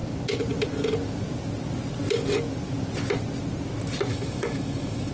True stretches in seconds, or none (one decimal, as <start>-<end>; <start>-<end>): 0.0-4.1

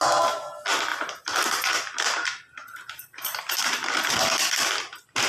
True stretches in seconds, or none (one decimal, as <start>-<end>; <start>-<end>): 0.0-0.9; 4.1-5.3

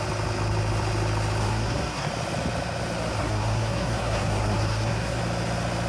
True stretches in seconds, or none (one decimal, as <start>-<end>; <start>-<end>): 0.0-1.4; 2.1-3.2; 5.2-5.9

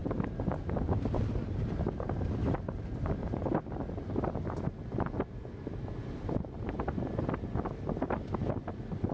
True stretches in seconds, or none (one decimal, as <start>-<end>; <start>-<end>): 0.0-0.5; 3.4-4.9

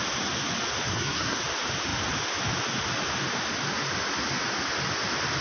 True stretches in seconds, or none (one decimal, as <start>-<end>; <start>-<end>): 0.0-0.9; 1.4-5.4

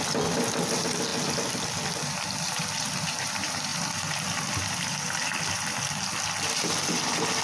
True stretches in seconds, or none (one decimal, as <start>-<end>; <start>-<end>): 0.0-7.4

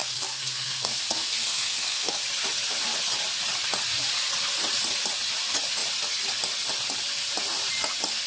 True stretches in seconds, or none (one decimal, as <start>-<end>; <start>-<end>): 2.2-8.3